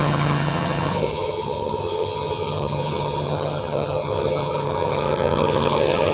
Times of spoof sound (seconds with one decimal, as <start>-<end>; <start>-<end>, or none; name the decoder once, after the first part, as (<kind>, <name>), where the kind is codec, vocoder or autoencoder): 0.0-6.1 (vocoder, HiFi-GAN)